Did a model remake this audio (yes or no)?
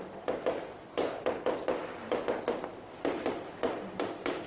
yes